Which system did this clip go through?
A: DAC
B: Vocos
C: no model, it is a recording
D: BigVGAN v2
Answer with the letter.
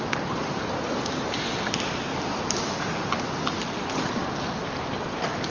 C